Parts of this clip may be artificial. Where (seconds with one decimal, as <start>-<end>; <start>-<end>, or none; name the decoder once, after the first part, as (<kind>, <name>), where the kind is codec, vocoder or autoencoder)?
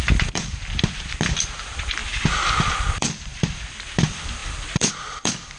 0.0-2.0 (vocoder, BigVGAN v2); 2.6-5.6